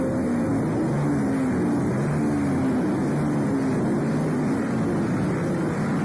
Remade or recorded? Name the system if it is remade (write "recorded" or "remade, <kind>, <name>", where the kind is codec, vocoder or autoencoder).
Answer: recorded